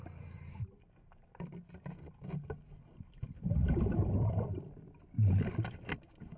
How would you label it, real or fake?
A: real